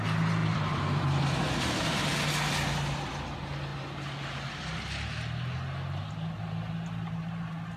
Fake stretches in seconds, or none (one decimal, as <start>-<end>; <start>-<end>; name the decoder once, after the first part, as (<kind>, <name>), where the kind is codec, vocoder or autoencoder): 0.4-2.0 (vocoder, BigVGAN v2)